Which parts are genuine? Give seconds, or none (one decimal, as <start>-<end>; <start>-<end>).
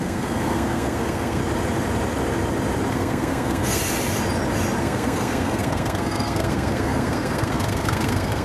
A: 1.4-2.9; 3.8-4.8